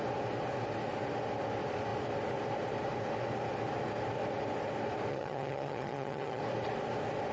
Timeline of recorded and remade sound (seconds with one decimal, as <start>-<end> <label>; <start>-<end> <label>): 0.0-5.1 recorded; 5.1-6.4 remade; 6.4-7.3 recorded